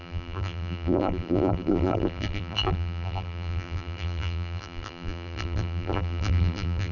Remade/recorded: remade